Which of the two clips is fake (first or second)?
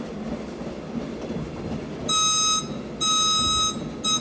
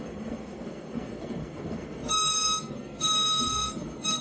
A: second